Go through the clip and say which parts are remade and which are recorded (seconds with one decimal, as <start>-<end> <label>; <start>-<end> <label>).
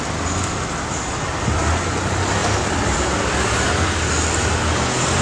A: 0.0-5.2 recorded